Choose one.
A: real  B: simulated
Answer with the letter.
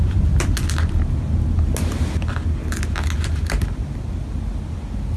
A